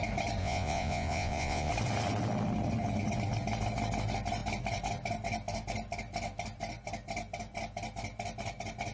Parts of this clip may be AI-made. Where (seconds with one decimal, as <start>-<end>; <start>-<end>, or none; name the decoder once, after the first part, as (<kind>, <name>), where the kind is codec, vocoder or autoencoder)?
0.4-1.7 (vocoder, Vocos)